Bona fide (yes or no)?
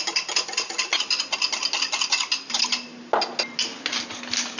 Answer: yes